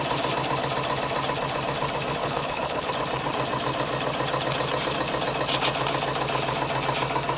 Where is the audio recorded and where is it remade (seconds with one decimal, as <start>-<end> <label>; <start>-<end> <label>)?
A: 0.0-2.2 recorded; 2.2-2.9 remade; 2.9-7.4 recorded